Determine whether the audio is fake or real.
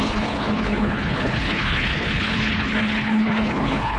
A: fake